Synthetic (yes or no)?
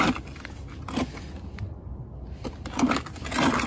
no